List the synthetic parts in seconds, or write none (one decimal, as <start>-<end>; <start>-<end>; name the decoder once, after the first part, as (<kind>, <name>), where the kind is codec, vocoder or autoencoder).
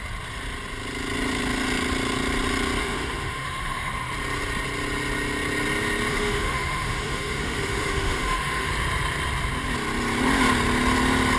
2.8-3.9 (autoencoder, DAC-VAE); 6.1-8.7